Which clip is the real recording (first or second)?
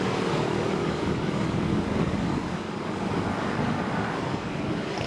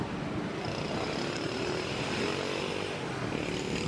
second